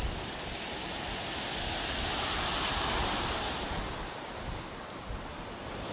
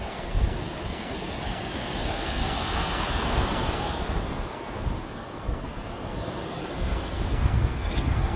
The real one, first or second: first